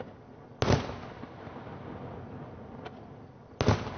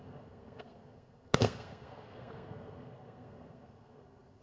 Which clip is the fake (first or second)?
second